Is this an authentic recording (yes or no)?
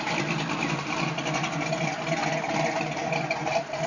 yes